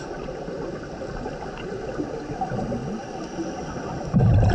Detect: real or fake real